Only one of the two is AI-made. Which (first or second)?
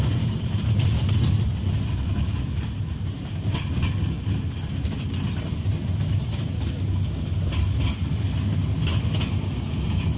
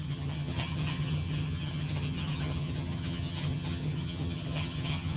second